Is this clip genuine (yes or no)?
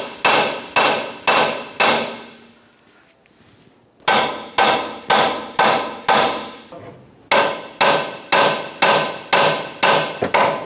yes